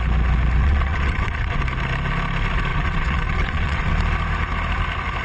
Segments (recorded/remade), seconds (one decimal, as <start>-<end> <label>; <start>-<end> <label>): 0.0-0.6 recorded; 0.6-1.6 remade; 1.6-2.7 recorded; 2.7-3.9 remade; 3.9-5.2 recorded